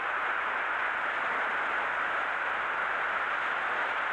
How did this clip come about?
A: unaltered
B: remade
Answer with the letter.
A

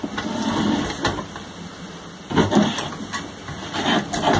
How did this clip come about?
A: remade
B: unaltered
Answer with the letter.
B